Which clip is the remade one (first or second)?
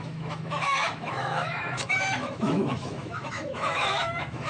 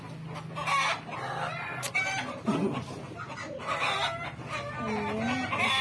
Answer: first